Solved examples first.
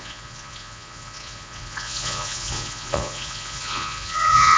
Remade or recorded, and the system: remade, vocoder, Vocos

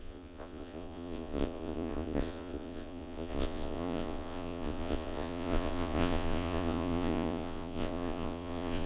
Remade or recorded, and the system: remade, vocoder, Vocos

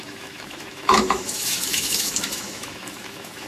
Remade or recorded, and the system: remade, autoencoder, DAC-VAE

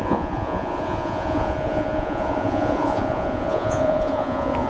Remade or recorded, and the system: remade, vocoder, Vocos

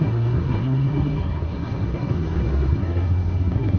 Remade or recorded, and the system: remade, codec, SNAC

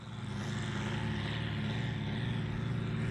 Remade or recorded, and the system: recorded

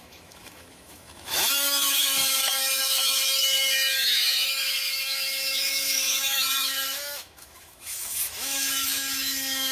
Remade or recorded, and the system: remade, autoencoder, DAC-VAE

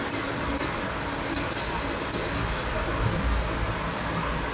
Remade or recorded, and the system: recorded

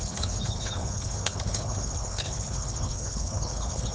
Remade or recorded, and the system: remade, codec, HILCodec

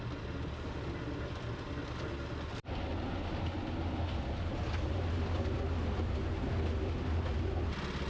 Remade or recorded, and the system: recorded